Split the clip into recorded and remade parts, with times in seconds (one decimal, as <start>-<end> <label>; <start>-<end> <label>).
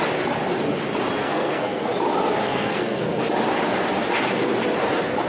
0.0-1.2 recorded; 1.2-1.9 remade; 1.9-2.4 recorded; 2.4-3.2 remade; 3.2-5.3 recorded